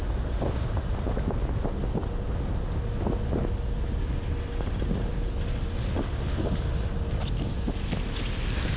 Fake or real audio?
real